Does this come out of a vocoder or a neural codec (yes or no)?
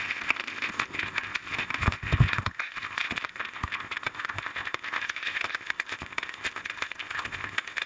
yes